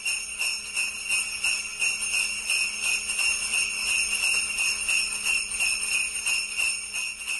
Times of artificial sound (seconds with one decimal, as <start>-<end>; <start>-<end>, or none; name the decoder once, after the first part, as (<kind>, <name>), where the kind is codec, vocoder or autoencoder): none